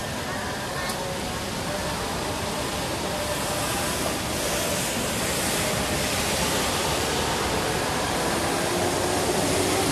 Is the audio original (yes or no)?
yes